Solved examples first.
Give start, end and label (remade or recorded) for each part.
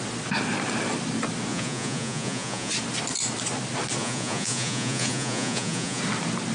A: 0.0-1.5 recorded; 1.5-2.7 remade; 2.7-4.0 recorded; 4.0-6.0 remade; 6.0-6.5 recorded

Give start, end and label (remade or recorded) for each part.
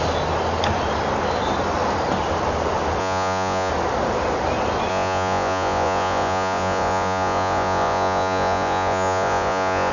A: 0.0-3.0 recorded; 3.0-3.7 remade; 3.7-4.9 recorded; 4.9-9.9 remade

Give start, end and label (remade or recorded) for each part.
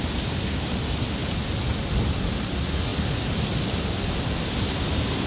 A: 0.0-5.3 recorded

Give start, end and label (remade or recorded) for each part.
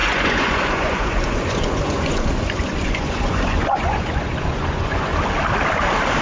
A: 0.0-5.1 remade; 5.1-6.2 recorded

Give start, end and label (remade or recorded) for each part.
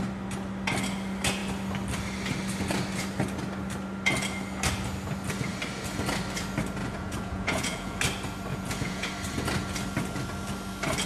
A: 0.0-6.8 recorded; 6.8-8.0 remade; 8.0-8.5 recorded; 8.5-9.1 remade; 9.1-11.1 recorded